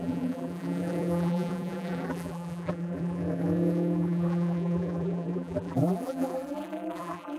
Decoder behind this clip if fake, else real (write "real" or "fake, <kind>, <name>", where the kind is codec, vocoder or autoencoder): fake, vocoder, BigVGAN v2